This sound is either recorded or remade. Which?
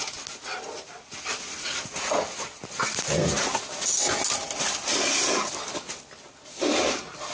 recorded